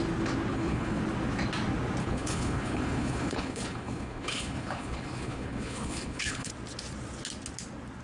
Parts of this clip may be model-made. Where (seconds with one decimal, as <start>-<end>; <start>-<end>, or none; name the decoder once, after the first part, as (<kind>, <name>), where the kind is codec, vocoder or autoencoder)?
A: 0.5-1.0 (codec, HILCodec); 2.0-6.5